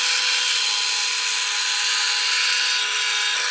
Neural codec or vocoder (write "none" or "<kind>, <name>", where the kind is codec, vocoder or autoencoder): none